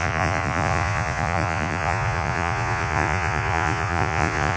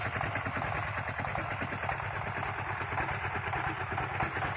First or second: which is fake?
first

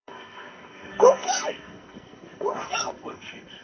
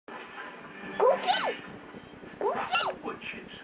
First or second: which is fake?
first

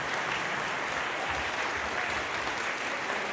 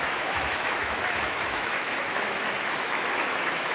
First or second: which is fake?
second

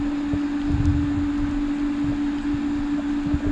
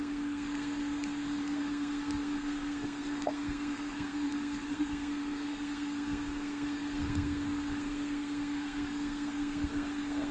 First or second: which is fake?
second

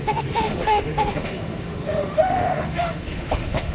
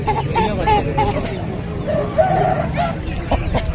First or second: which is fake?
first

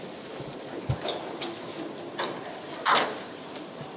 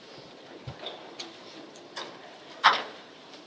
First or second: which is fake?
second